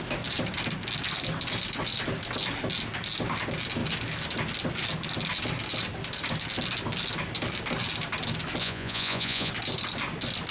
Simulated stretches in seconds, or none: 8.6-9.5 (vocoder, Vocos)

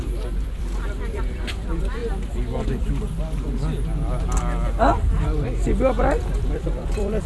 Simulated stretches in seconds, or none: 0.0-2.0 (vocoder, BigVGAN v2); 6.4-7.3

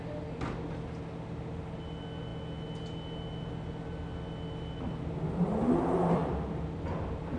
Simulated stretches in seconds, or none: 6.2-7.4 (vocoder, BigVGAN v2)

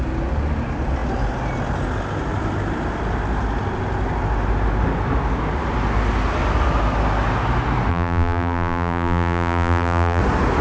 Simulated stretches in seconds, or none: 7.9-10.2 (vocoder, BigVGAN v2)

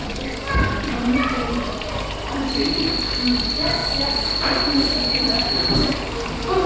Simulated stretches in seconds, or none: 0.0-2.5 (vocoder, BigVGAN v2)